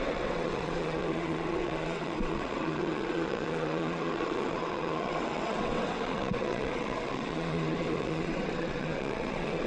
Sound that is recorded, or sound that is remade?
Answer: remade